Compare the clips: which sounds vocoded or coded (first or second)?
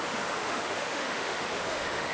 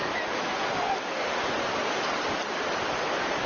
first